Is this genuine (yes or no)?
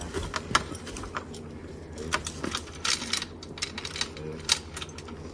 yes